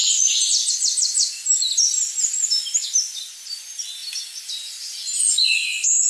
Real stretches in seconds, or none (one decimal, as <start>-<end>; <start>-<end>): 0.7-6.1